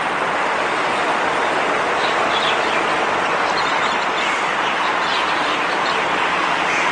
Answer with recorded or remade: recorded